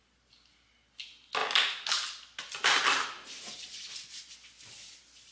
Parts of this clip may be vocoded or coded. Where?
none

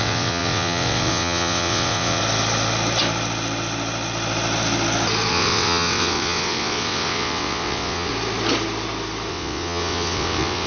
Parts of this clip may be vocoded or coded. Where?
0.0-2.2 (vocoder, WaveNeXt); 5.3-8.1; 9.3-10.7

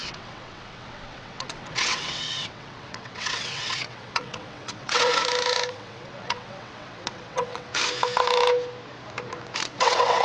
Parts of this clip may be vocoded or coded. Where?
0.0-5.1 (vocoder, WaveNeXt); 5.7-7.7; 9.6-10.2

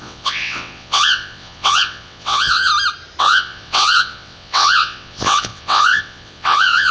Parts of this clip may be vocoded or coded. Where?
0.0-2.7 (vocoder, WaveNeXt); 3.2-6.9

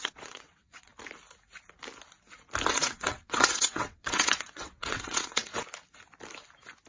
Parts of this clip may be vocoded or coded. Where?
0.0-0.9 (vocoder, WaveNeXt); 2.7-5.5

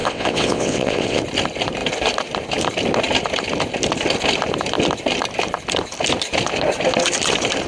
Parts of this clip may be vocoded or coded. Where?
0.0-1.2 (vocoder, WaveNeXt)

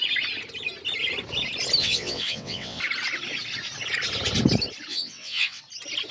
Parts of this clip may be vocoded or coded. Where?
1.8-2.8 (vocoder, WaveNeXt); 4.9-5.6